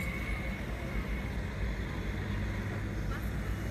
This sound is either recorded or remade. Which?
recorded